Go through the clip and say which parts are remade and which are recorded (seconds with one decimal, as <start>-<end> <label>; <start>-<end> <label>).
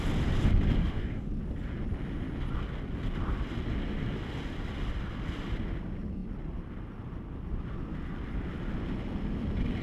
0.0-0.8 recorded; 0.8-1.3 remade; 1.3-9.8 recorded